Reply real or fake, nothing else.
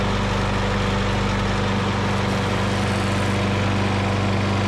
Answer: real